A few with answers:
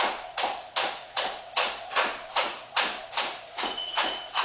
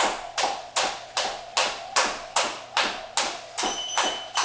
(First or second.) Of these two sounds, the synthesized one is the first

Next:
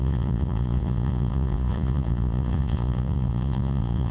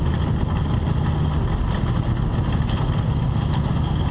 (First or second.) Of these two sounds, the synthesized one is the first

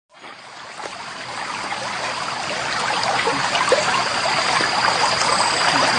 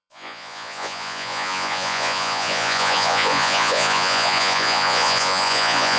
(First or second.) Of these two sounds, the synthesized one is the second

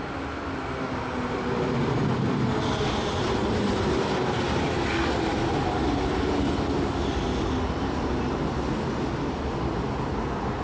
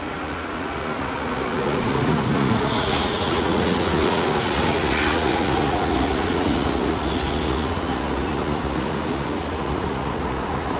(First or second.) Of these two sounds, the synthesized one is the second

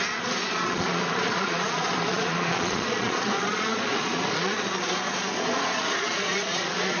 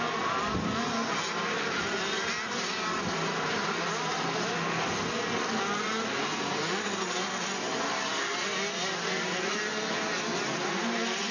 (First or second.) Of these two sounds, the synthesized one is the first